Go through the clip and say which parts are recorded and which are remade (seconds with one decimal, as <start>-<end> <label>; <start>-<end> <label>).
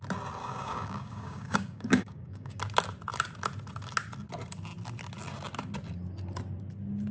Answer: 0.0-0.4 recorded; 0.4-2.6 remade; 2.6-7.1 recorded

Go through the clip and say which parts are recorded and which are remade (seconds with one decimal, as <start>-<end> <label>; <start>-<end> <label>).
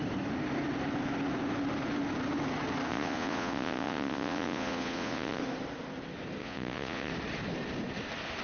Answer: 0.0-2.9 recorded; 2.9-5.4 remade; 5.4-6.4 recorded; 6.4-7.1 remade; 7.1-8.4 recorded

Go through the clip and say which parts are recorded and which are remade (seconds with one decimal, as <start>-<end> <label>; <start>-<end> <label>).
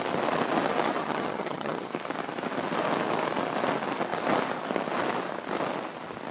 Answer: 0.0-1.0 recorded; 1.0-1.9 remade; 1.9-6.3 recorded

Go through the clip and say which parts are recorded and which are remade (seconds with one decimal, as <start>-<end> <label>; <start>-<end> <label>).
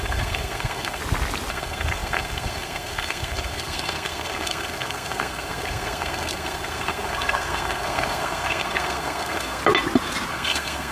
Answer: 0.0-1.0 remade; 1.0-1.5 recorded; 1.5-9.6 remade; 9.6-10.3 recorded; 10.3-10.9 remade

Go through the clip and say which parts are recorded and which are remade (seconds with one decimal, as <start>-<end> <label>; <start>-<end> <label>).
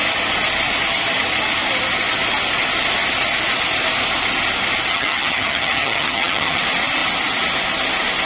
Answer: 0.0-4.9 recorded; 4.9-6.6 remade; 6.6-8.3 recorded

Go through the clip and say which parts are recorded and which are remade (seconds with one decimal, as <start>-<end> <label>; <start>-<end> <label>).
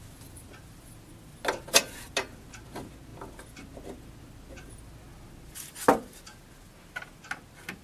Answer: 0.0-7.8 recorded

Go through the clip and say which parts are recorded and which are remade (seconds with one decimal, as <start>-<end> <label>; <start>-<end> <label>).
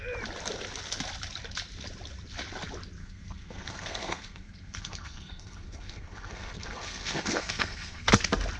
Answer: 0.0-3.0 recorded; 3.0-8.1 remade; 8.1-8.6 recorded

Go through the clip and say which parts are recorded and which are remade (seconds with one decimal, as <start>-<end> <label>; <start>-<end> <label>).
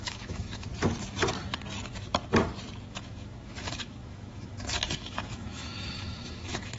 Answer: 0.0-0.7 remade; 0.7-2.9 recorded; 2.9-6.8 remade